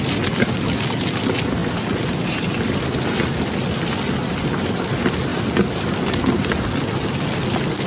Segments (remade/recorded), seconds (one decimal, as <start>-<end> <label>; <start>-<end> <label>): 0.0-7.9 recorded